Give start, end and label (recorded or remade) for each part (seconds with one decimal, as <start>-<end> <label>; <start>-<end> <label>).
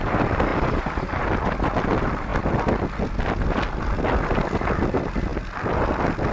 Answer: 0.0-6.3 recorded